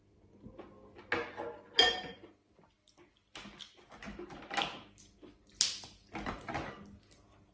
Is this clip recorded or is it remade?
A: recorded